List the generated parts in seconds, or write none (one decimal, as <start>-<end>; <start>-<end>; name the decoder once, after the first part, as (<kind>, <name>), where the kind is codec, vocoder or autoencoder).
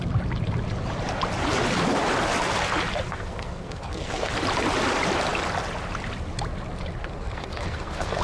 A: 3.1-4.3 (codec, SNAC); 7.0-8.2